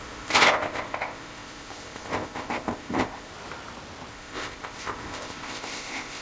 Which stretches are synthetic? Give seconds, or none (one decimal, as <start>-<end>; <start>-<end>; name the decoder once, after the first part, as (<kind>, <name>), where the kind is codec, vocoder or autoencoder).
0.0-3.3 (codec, ZipCodec); 4.1-6.2